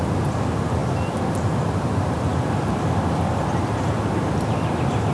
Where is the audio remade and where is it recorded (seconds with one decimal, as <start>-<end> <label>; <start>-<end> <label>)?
0.0-5.1 recorded